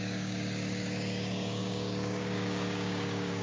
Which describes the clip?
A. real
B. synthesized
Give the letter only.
B